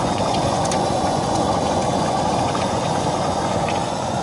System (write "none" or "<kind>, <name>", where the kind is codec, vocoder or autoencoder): vocoder, Vocos